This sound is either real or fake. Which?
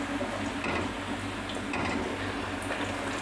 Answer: real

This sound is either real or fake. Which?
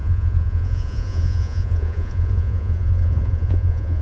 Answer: fake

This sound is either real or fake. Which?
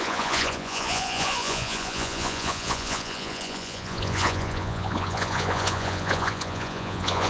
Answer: fake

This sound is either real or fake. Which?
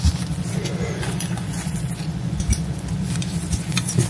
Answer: fake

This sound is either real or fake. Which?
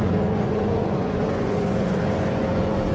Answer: fake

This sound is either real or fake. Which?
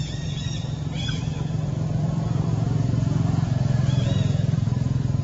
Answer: fake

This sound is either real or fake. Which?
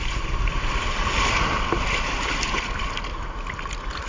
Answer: real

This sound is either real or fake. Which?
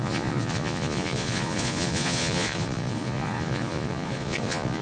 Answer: fake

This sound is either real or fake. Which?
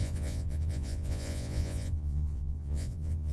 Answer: fake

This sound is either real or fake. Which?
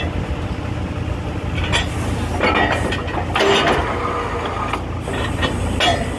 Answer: real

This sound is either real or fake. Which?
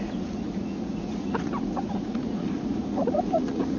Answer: fake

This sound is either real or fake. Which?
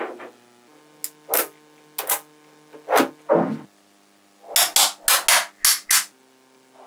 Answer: real